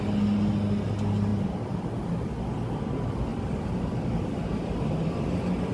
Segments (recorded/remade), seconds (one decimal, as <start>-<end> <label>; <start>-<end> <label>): 0.0-1.3 recorded; 1.3-2.0 remade; 2.0-3.3 recorded; 3.3-4.7 remade; 4.7-5.7 recorded